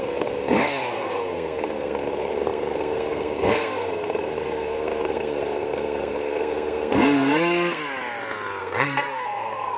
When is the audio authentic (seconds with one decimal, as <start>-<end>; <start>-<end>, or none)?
7.8-8.6